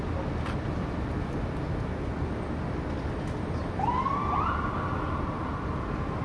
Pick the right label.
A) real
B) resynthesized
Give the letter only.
A